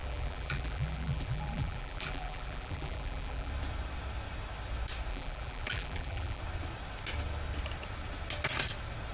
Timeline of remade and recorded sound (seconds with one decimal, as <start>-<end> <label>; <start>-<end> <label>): 0.0-3.5 remade; 3.5-5.1 recorded; 5.1-6.4 remade; 6.4-9.1 recorded